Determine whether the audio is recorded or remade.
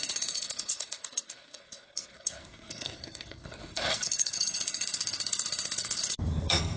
remade